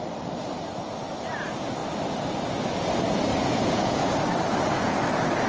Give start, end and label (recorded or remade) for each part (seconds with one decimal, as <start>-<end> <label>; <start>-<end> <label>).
0.0-3.3 recorded; 3.3-4.1 remade; 4.1-5.5 recorded